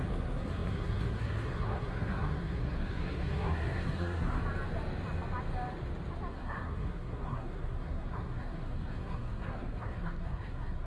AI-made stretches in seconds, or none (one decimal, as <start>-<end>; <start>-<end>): 0.0-4.4; 6.3-10.9

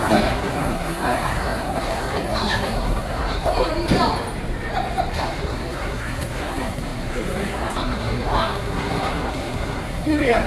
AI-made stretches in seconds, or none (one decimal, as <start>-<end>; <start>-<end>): 0.0-3.7; 5.1-10.5